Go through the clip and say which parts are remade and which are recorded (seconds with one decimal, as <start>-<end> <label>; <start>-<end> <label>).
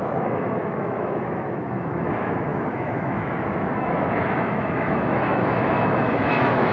0.0-6.7 remade